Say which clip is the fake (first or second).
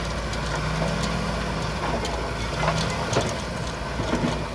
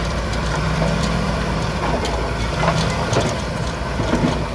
second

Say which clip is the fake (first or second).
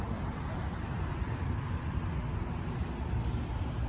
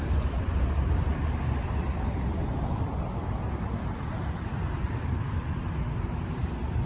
second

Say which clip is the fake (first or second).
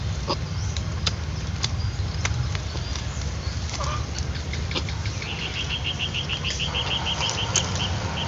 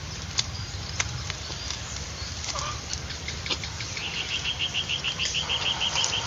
second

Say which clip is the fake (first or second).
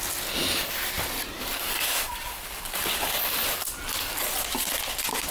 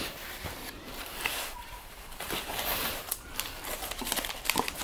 second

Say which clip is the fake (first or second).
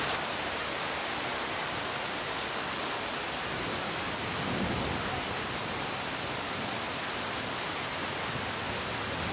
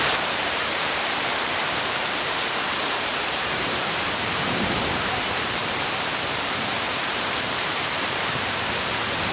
second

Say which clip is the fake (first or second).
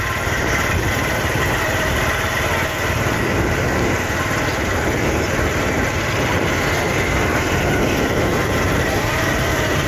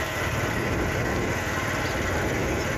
first